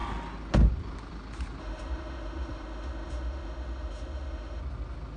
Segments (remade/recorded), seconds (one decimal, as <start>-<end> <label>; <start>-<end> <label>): 0.0-1.6 recorded; 1.6-4.6 remade; 4.6-5.2 recorded